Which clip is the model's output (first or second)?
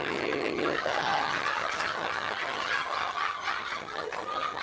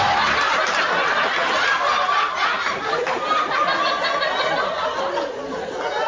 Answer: first